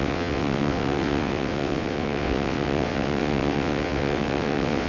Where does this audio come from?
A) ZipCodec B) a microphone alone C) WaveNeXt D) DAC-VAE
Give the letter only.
C